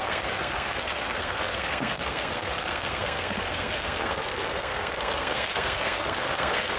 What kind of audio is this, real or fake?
fake